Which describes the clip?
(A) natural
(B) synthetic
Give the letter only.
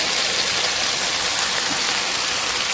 A